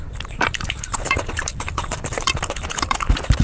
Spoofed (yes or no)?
yes